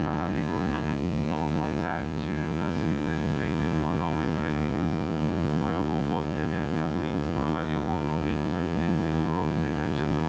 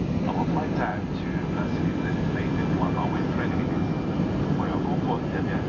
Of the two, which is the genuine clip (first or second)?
second